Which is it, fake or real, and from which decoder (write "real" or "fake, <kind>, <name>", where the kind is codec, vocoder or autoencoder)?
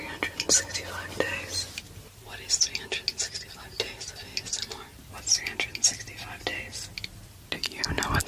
real